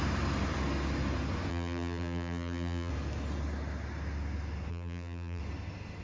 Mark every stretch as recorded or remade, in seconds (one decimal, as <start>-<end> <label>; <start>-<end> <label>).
0.0-1.5 recorded; 1.5-2.9 remade; 2.9-4.7 recorded; 4.7-5.4 remade; 5.4-6.0 recorded